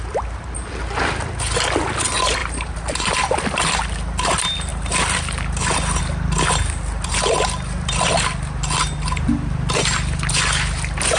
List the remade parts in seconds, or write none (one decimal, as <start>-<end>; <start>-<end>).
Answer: 2.4-3.4